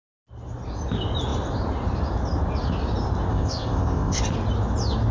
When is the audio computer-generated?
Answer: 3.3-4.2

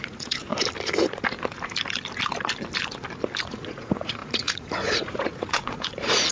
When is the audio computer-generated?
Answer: 0.0-0.5; 3.4-6.3

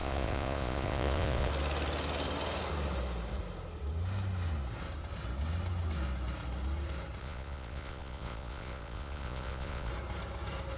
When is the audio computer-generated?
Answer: 0.0-1.5; 7.2-9.9

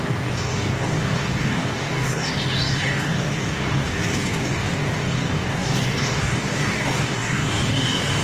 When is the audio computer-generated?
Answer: 0.0-8.2

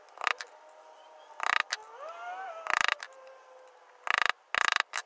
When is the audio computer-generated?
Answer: none

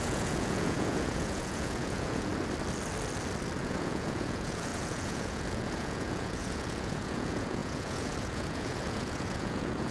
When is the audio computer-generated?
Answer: 0.0-2.3; 3.6-9.9

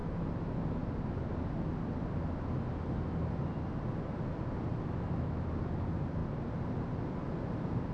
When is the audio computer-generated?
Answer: 4.7-5.5